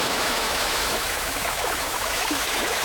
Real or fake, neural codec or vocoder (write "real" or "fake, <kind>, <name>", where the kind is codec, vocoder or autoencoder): fake, autoencoder, DAC-VAE